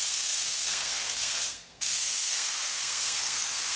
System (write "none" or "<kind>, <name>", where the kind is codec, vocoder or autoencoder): codec, SNAC